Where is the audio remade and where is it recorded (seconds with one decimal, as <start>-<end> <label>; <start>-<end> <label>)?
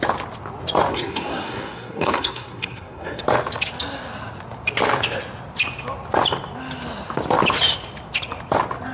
0.0-0.9 recorded; 0.9-3.2 remade; 3.2-8.9 recorded